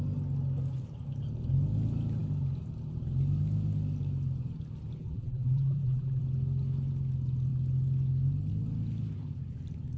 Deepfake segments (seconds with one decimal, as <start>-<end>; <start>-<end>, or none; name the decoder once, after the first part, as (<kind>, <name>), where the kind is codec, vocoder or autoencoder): 5.0-6.2 (vocoder, BigVGAN v2)